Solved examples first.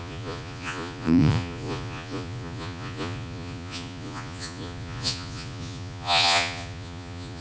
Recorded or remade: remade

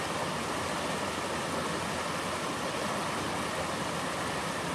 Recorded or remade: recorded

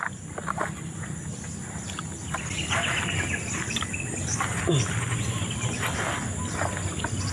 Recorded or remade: recorded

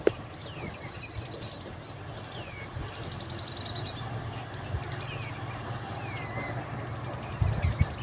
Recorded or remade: recorded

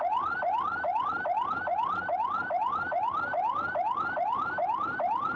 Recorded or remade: recorded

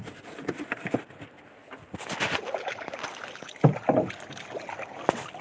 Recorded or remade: recorded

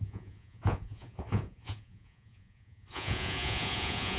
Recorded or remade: remade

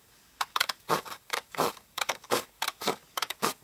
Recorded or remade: remade